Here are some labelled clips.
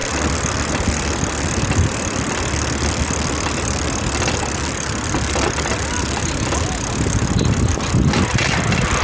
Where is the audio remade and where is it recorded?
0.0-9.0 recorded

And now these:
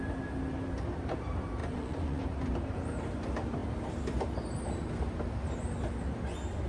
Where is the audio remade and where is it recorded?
0.0-1.6 recorded; 1.6-2.2 remade; 2.2-6.7 recorded

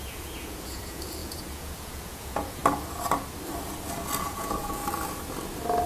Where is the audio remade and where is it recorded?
0.0-2.6 remade; 2.6-4.2 recorded; 4.2-4.8 remade; 4.8-5.9 recorded

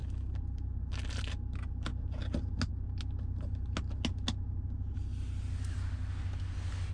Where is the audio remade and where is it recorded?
0.0-6.9 recorded

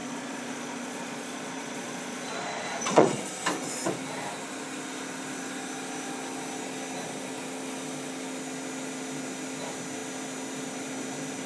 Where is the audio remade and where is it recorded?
0.0-3.3 remade; 3.3-11.5 recorded